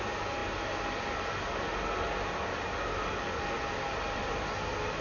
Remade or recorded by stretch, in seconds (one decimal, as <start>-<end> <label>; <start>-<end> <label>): 0.0-5.0 recorded